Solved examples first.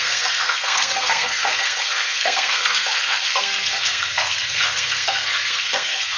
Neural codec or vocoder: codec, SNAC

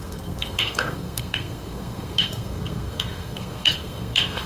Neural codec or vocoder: codec, SNAC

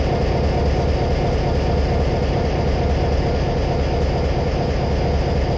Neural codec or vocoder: none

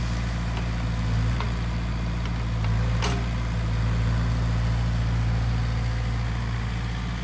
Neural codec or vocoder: none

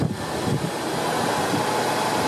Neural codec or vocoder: none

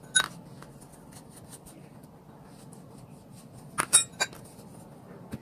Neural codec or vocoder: none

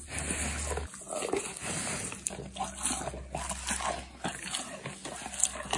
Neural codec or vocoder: none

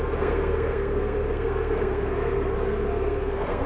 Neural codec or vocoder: codec, SNAC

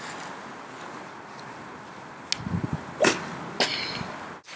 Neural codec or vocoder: none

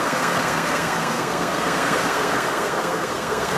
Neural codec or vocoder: codec, SNAC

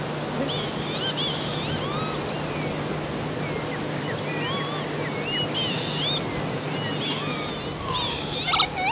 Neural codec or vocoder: none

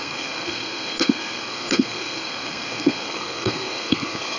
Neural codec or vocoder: codec, SNAC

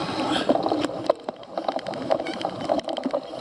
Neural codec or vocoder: none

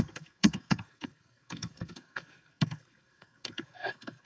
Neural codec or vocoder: codec, SNAC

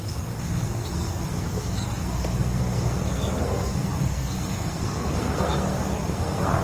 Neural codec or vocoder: codec, SNAC